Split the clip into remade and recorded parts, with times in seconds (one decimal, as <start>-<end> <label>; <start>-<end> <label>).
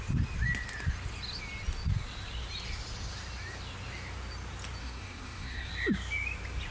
0.0-4.8 recorded; 4.8-5.7 remade; 5.7-6.7 recorded